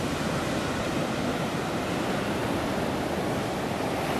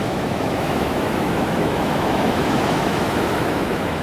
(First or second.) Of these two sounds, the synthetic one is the second